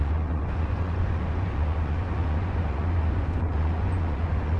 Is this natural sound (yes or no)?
no